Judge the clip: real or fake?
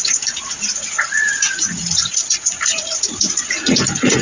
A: fake